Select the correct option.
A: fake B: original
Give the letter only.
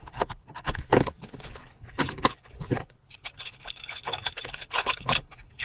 A